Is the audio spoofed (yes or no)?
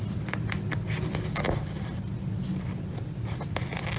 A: no